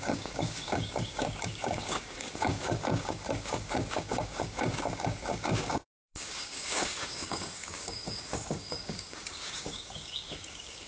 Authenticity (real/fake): fake